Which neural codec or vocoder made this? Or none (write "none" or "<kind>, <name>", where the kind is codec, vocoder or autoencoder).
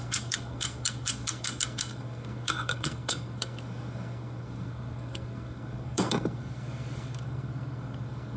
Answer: codec, SNAC